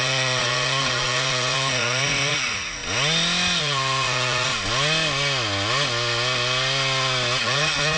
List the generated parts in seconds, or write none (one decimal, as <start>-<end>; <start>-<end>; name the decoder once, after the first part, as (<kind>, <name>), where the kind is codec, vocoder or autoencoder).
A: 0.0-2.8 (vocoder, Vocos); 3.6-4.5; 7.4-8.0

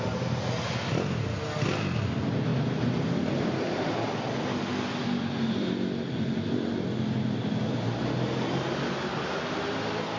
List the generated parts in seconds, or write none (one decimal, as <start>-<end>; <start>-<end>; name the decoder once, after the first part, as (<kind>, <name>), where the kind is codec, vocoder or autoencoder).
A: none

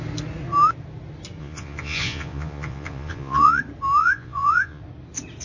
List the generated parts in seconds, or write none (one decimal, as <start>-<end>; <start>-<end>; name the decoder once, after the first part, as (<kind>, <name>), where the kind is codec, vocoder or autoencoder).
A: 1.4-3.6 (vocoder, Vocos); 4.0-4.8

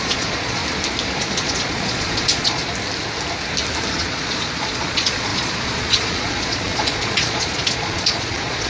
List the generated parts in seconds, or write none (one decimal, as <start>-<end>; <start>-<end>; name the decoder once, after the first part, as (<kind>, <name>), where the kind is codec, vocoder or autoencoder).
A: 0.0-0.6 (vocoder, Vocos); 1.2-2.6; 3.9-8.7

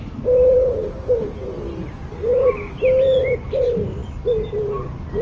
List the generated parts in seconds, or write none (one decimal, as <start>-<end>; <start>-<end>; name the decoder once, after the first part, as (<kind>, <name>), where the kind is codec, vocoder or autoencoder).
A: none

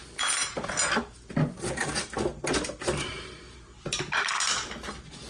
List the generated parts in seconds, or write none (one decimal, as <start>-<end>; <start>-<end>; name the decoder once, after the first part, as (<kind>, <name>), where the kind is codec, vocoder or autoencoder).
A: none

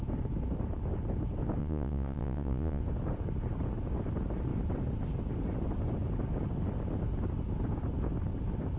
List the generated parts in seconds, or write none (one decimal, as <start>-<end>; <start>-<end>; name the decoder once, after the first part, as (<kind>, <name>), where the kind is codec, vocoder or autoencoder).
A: 1.6-2.8 (vocoder, Vocos)

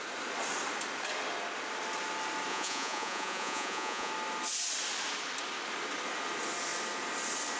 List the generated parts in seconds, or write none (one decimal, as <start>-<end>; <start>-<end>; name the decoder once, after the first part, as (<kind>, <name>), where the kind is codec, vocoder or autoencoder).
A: 2.5-4.1 (vocoder, Vocos)